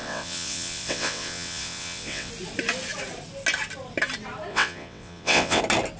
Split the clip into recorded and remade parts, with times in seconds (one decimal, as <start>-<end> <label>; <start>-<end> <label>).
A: 0.0-2.3 remade; 2.3-4.5 recorded; 4.5-5.6 remade; 5.6-6.0 recorded